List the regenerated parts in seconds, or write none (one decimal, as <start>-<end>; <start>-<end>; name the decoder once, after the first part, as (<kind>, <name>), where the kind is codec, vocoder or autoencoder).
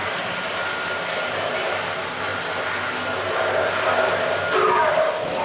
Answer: none